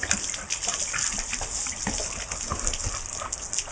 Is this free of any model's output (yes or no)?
yes